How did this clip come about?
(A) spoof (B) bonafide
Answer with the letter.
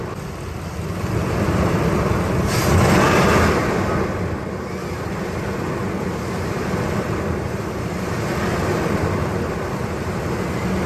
B